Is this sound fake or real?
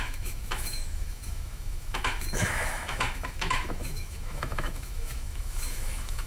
fake